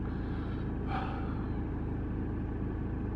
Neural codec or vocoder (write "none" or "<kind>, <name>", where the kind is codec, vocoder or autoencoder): none